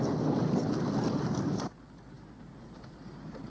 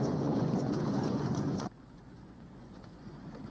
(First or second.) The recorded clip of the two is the first